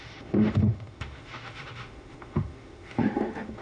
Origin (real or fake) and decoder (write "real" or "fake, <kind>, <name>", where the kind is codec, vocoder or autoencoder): fake, autoencoder, DAC-VAE